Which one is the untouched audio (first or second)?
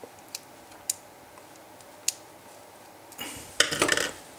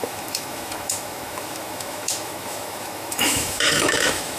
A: first